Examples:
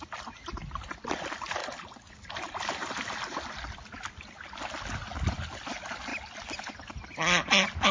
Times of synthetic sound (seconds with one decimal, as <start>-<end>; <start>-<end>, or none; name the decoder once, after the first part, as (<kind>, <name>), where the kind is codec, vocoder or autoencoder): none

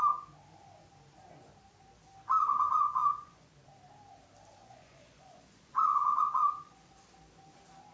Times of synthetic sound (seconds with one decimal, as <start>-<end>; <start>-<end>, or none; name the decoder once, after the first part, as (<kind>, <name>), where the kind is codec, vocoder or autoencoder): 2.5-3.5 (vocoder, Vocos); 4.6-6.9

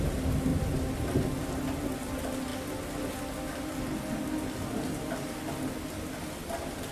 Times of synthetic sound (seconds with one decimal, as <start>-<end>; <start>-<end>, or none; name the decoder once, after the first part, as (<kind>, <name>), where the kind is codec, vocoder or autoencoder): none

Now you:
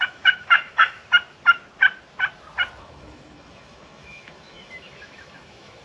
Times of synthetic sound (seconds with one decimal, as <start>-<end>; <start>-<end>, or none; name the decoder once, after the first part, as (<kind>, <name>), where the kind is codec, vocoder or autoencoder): 0.0-1.0 (autoencoder, DAC-VAE); 2.8-5.8